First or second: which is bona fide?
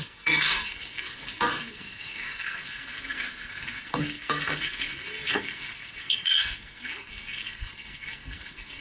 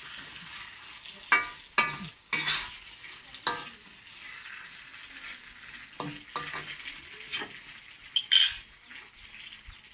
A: second